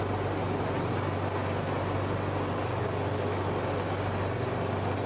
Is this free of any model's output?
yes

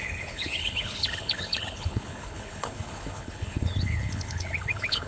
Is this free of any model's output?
no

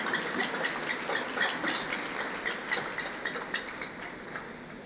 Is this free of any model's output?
yes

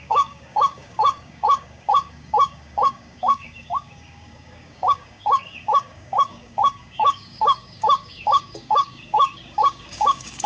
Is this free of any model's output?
no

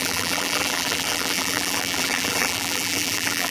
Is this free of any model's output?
no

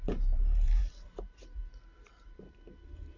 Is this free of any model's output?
no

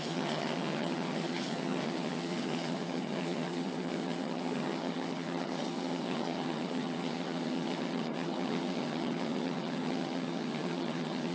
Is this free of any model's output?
no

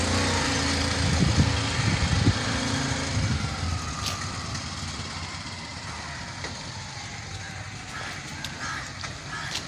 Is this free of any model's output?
yes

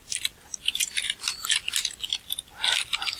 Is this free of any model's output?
yes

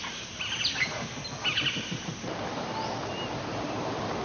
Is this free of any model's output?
yes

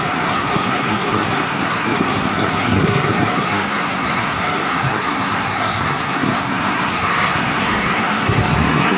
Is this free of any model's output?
no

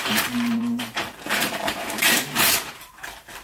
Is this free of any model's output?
no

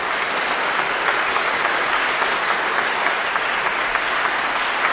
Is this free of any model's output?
yes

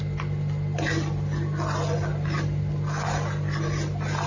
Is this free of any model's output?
yes